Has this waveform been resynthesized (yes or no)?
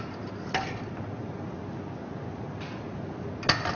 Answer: no